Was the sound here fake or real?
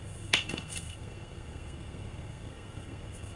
fake